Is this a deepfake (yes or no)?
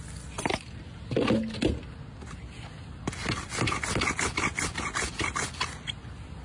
no